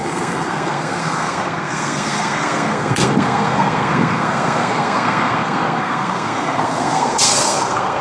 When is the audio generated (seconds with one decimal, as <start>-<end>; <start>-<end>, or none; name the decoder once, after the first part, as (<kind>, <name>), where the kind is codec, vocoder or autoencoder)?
0.0-8.0 (codec, SNAC)